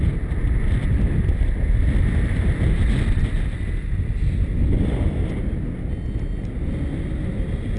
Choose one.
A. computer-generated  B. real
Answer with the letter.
B